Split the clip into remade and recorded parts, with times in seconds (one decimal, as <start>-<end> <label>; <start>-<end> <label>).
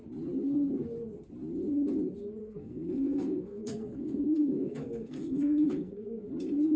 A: 0.0-2.4 recorded; 2.4-6.3 remade; 6.3-6.8 recorded